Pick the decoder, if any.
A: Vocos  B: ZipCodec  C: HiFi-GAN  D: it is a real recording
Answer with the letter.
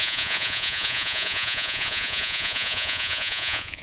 A